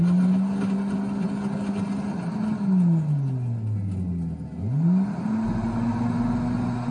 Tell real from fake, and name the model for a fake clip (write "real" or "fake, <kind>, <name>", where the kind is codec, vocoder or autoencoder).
real